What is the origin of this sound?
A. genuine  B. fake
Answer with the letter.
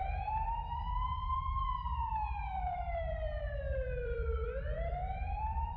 B